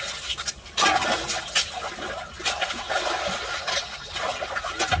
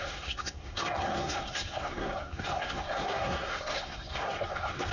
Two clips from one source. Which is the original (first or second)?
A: first